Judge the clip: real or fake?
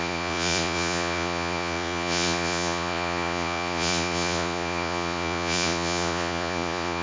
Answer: fake